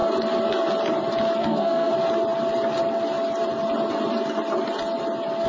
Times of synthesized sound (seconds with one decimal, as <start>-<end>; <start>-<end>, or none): 1.4-1.9